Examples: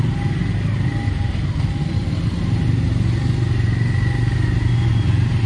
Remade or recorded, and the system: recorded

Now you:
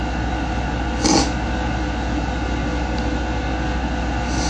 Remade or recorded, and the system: recorded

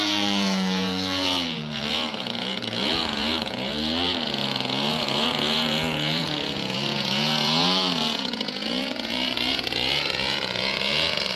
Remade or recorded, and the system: remade, vocoder, Vocos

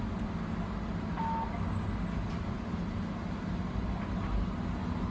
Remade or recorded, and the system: recorded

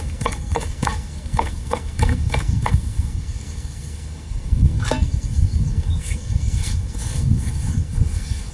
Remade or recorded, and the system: remade, codec, SNAC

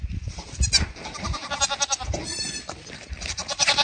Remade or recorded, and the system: remade, vocoder, BigVGAN v2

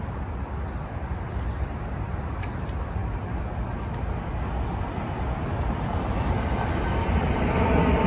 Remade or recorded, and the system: recorded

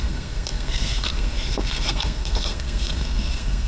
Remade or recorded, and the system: remade, codec, SNAC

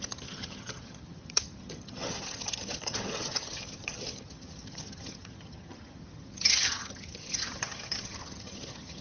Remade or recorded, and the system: remade, vocoder, HiFi-GAN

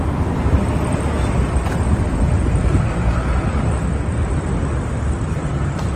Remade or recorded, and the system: recorded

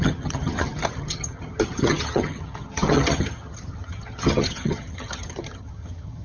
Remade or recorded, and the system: remade, vocoder, HiFi-GAN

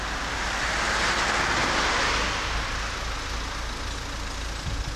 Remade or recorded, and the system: recorded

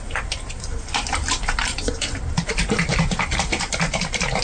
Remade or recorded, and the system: recorded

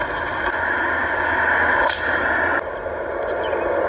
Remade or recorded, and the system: recorded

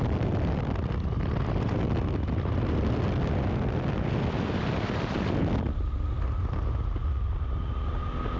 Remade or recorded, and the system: recorded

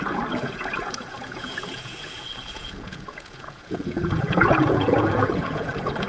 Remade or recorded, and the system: remade, vocoder, Vocos